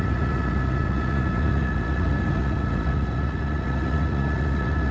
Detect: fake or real fake